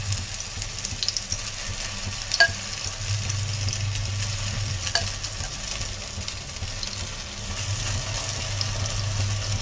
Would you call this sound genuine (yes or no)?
yes